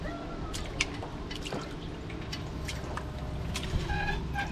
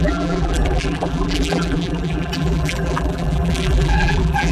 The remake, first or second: second